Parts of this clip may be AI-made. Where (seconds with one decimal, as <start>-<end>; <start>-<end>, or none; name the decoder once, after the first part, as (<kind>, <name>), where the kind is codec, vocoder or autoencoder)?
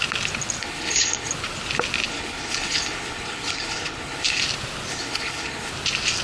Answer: 0.6-1.3 (codec, HILCodec); 2.1-4.4; 4.9-5.7